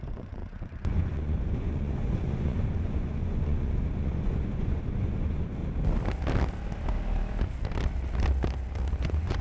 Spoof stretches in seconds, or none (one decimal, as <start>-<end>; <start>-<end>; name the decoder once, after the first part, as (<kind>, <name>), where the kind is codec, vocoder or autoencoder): 0.0-5.6 (vocoder, Vocos); 8.9-9.4